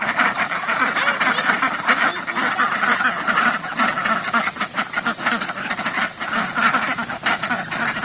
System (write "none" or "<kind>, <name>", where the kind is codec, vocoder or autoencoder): none